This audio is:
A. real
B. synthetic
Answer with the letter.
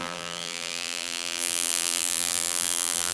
B